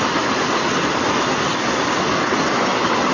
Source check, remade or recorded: recorded